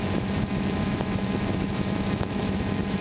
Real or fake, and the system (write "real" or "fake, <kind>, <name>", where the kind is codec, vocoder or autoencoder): fake, autoencoder, DAC-VAE